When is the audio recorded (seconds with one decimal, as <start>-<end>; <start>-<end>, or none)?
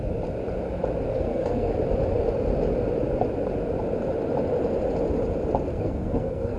0.0-1.1; 1.7-5.7